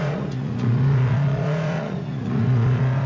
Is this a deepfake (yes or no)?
yes